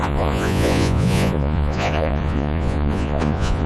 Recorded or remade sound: remade